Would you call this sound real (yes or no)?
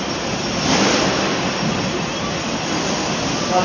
yes